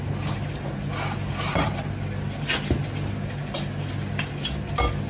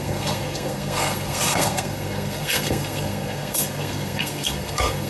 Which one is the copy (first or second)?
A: second